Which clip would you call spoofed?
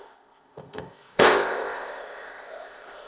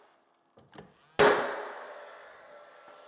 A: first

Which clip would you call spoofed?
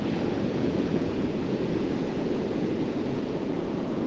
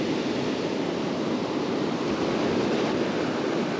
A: first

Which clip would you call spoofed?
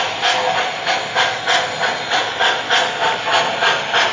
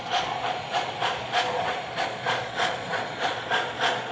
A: second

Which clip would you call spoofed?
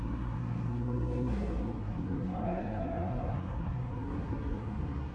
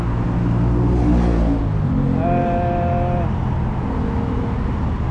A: first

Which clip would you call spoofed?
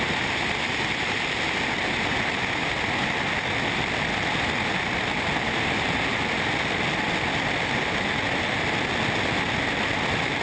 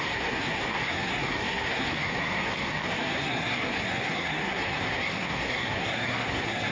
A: second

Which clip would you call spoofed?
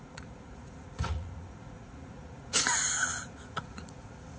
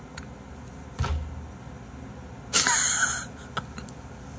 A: first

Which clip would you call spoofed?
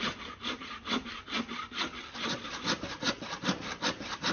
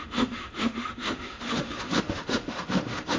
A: second